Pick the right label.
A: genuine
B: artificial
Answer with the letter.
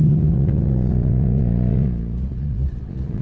B